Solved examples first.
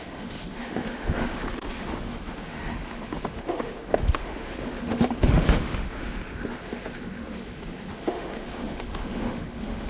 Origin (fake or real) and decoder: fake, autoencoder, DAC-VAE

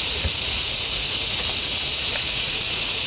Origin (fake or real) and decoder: fake, vocoder, Vocos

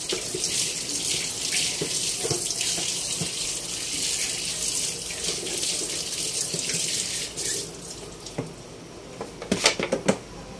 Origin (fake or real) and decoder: real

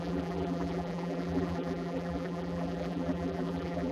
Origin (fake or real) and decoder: fake, vocoder, BigVGAN v2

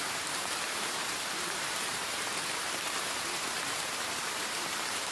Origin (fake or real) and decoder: fake, vocoder, BigVGAN v2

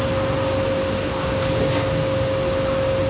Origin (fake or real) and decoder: real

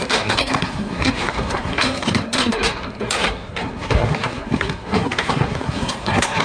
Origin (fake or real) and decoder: fake, codec, SNAC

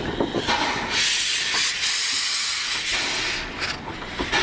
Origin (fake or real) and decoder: real